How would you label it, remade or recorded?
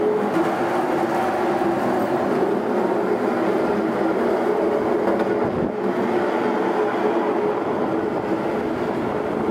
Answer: recorded